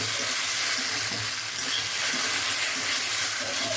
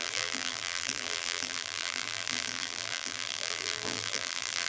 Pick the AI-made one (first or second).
second